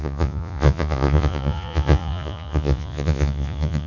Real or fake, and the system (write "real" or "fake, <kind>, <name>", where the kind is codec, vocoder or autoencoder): fake, vocoder, Vocos